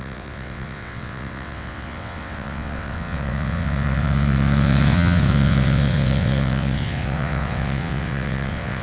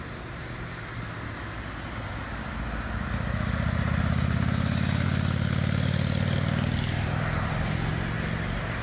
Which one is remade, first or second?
first